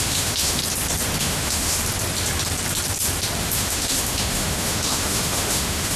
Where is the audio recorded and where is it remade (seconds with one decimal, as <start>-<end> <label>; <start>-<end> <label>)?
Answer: 0.0-0.6 remade; 0.6-1.2 recorded; 1.2-1.8 remade; 1.8-3.4 recorded; 3.4-6.0 remade